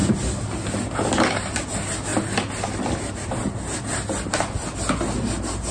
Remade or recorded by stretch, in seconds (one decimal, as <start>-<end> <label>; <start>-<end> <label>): 0.0-5.7 recorded